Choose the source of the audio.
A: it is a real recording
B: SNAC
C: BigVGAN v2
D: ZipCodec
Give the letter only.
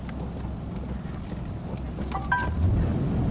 A